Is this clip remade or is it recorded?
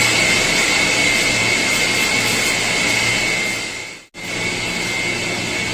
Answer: recorded